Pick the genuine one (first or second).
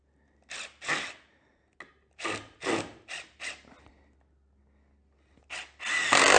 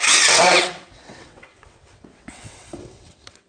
first